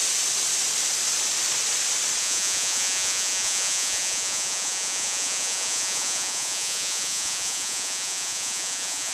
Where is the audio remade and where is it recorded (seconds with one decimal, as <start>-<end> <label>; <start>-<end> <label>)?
0.0-2.2 recorded; 2.2-9.1 remade